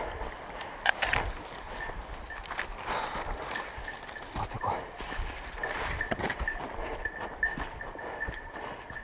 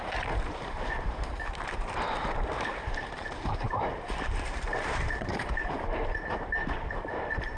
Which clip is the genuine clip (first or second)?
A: first